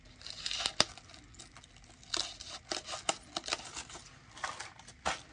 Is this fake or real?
real